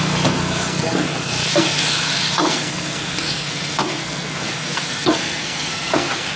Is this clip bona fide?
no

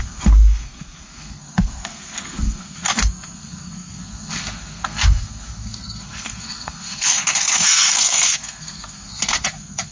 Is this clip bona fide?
no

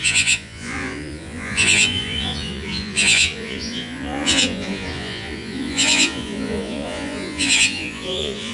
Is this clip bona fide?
no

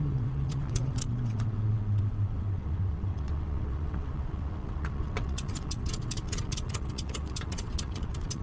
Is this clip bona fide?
no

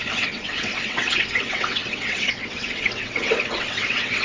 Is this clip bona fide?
no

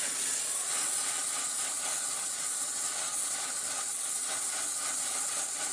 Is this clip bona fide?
no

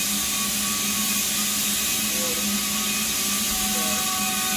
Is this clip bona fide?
yes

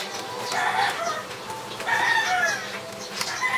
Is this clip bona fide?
yes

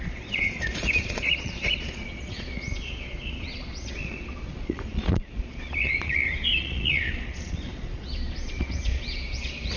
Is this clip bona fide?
no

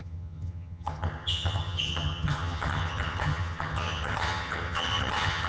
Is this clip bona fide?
no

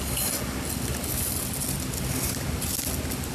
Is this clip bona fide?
yes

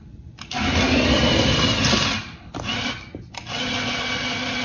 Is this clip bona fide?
yes